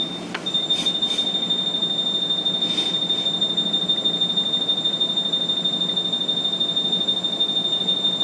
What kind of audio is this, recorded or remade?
recorded